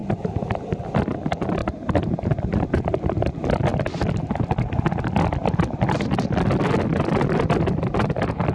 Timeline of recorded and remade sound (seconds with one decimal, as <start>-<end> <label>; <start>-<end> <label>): 0.0-8.5 recorded